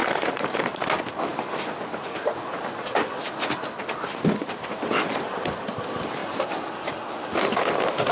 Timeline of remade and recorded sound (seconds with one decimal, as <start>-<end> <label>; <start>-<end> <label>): 0.0-0.9 remade; 0.9-8.1 recorded